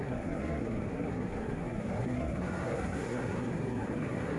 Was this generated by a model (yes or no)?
yes